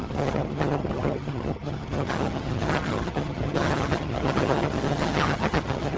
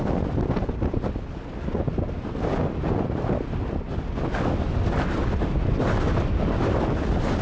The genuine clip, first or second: second